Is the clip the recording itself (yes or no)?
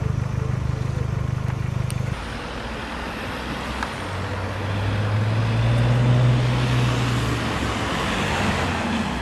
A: yes